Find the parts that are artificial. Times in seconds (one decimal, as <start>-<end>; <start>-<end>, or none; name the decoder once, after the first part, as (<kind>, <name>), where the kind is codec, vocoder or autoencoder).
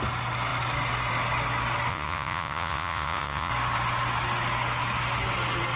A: 1.9-3.5 (vocoder, Vocos)